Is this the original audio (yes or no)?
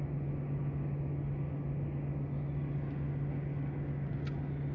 yes